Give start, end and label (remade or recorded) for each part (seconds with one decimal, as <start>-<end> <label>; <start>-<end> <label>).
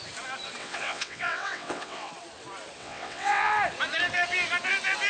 0.0-0.6 recorded; 0.6-2.1 remade; 2.1-2.8 recorded; 2.8-3.5 remade; 3.5-5.1 recorded